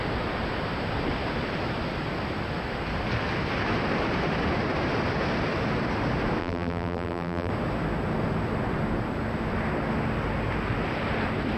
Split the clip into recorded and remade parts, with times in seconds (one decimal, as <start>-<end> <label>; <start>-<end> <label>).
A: 0.0-6.4 recorded; 6.4-7.5 remade; 7.5-11.6 recorded